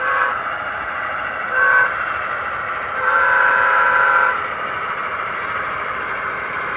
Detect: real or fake fake